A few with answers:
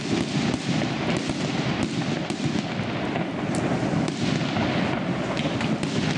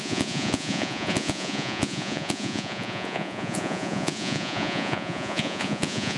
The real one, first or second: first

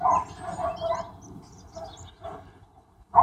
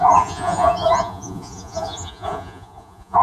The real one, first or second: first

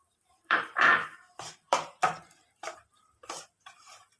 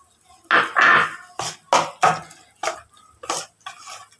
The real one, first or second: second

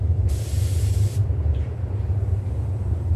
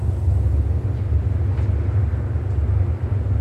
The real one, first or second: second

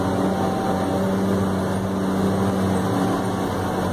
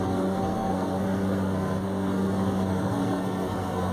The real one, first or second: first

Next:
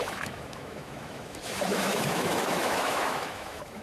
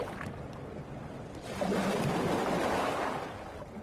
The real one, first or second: second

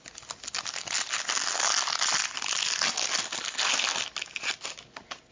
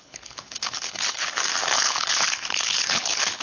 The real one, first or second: first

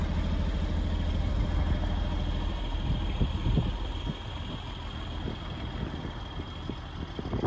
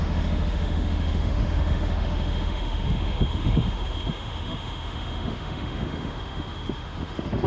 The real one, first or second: first